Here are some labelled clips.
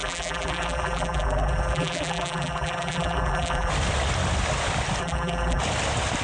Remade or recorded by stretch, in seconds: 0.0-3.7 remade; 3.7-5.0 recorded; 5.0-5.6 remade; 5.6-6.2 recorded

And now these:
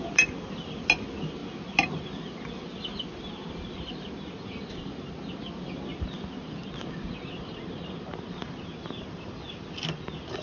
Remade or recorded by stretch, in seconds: 0.0-10.4 recorded

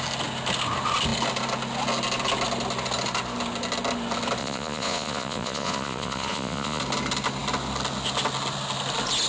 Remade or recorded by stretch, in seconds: 0.0-4.4 recorded; 4.4-6.8 remade; 6.8-9.3 recorded